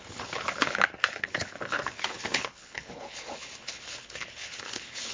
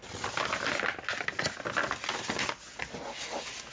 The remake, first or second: first